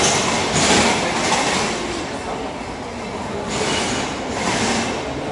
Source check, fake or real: real